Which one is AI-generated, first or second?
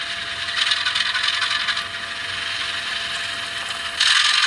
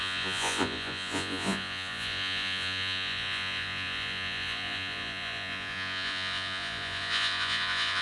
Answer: second